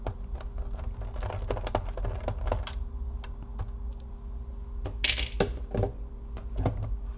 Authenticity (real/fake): real